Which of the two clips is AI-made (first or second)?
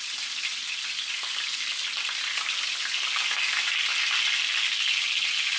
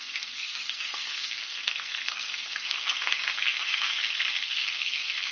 second